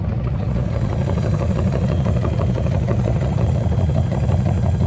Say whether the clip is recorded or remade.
remade